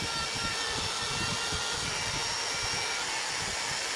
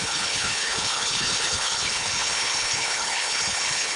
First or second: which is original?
first